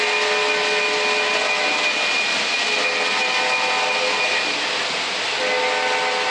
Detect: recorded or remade recorded